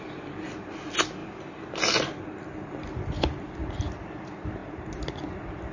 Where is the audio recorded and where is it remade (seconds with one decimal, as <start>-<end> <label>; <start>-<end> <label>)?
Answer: 0.0-5.7 recorded